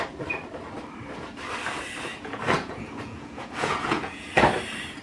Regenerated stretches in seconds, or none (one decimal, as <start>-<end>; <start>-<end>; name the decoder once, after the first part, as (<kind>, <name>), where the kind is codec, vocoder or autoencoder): 2.1-4.3 (vocoder, Vocos)